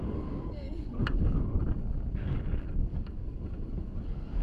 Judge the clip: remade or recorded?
remade